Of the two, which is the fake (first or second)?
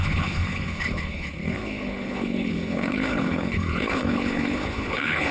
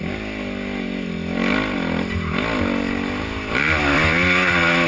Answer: first